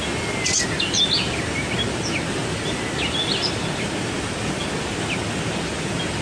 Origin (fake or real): real